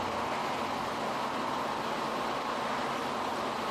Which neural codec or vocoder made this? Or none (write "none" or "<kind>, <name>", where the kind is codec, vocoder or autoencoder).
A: none